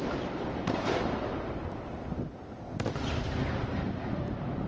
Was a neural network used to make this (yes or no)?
yes